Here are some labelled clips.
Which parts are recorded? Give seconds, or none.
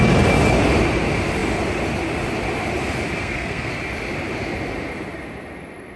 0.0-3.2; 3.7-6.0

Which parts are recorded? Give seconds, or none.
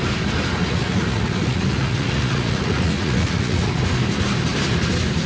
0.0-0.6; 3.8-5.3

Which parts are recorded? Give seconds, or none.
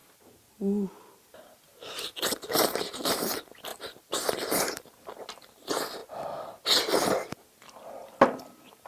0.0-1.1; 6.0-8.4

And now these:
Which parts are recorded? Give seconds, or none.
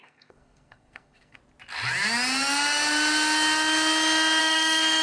1.4-4.4